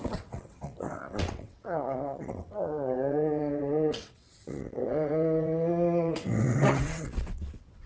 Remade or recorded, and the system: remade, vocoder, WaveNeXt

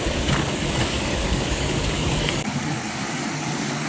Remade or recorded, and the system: remade, codec, DAC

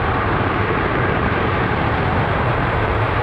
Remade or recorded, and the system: remade, vocoder, BigVGAN v2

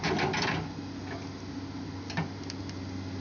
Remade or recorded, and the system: recorded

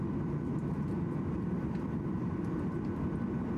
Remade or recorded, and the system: recorded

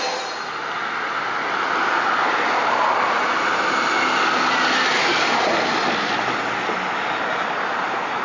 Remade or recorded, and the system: recorded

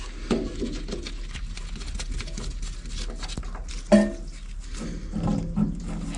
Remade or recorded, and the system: recorded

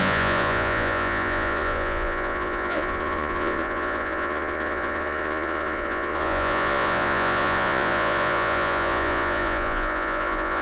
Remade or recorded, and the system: remade, vocoder, Vocos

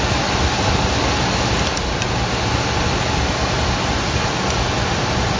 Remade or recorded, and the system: recorded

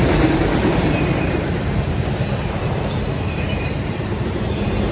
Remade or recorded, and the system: remade, vocoder, BigVGAN v2